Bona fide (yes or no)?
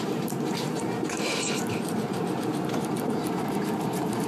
no